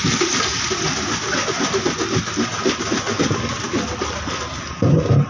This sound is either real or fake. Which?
real